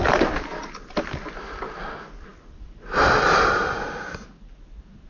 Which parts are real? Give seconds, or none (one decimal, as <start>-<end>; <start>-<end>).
0.0-5.1

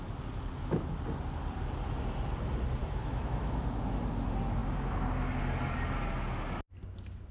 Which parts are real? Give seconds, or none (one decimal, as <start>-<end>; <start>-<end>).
0.0-2.8; 4.0-7.3

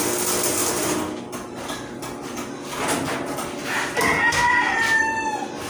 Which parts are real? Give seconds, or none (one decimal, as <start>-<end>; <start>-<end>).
0.0-4.5; 5.0-5.7

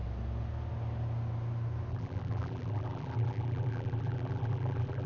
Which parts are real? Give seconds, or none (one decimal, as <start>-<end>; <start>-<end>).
0.0-1.9